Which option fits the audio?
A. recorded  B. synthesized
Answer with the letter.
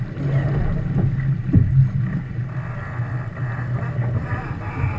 A